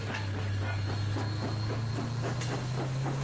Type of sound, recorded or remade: recorded